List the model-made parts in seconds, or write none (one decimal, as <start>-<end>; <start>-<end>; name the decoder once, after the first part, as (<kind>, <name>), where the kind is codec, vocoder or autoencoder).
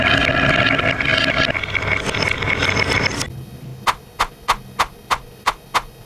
none